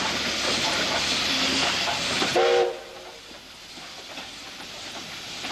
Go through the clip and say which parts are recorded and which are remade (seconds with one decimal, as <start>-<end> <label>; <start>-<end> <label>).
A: 0.0-5.5 recorded